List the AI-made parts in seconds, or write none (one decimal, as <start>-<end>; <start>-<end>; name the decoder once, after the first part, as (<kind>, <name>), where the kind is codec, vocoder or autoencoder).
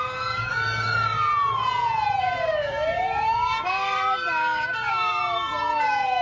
0.0-1.3 (codec, DAC); 2.2-6.2